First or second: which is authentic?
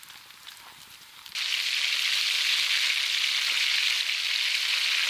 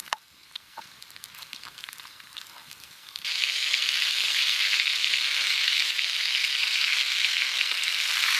first